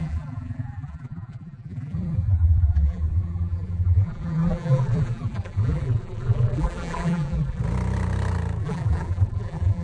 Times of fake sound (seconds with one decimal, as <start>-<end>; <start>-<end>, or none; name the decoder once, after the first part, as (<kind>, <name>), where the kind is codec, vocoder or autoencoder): 0.0-7.6 (vocoder, BigVGAN v2); 8.6-9.8